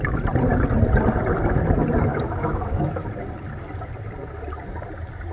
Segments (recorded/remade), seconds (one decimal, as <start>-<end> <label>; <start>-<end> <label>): 0.0-2.1 recorded; 2.1-3.1 remade; 3.1-5.3 recorded